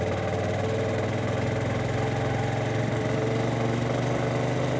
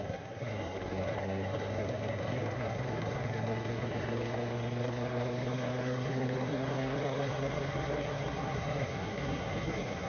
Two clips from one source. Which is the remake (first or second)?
second